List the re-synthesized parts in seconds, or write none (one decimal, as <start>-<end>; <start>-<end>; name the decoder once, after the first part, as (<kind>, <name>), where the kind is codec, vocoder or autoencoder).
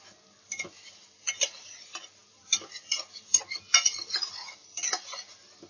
none